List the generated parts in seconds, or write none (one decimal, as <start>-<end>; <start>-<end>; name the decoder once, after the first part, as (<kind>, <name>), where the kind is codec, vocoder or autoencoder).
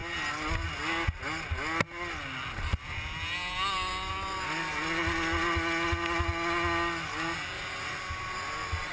none